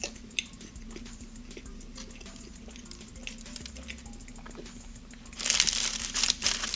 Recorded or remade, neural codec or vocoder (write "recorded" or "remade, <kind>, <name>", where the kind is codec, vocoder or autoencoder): recorded